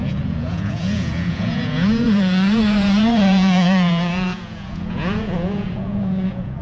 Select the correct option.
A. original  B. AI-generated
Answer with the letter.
B